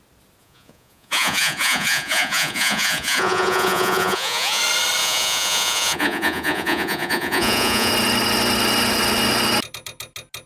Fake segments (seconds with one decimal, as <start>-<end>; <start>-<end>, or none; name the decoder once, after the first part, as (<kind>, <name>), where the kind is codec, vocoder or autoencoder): 0.4-4.6 (vocoder, Vocos); 5.0-7.9